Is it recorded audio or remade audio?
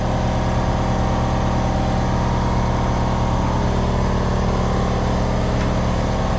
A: recorded